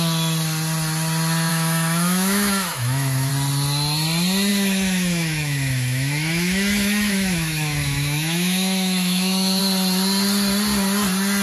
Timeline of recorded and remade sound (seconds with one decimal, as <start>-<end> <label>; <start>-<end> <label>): 0.0-1.5 recorded; 1.5-3.3 remade; 3.3-4.5 recorded; 4.5-9.6 remade; 9.6-11.4 recorded

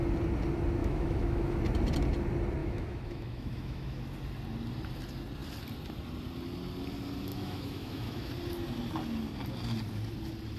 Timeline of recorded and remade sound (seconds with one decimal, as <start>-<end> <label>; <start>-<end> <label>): 0.0-0.8 recorded; 0.8-1.6 remade; 1.6-2.6 recorded; 2.6-4.0 remade; 4.0-7.3 recorded; 7.3-8.3 remade; 8.3-10.6 recorded